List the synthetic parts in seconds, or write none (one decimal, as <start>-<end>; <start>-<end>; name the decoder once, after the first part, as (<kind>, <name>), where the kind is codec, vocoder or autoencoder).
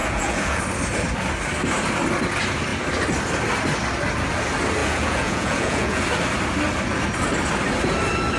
0.0-0.6 (vocoder, Vocos); 4.8-6.0